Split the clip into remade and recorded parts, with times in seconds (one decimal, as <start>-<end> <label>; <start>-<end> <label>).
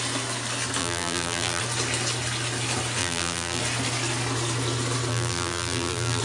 0.0-0.8 recorded; 0.8-1.6 remade; 1.6-3.0 recorded; 3.0-3.6 remade; 3.6-5.1 recorded; 5.1-6.2 remade